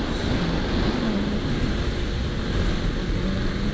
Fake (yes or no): no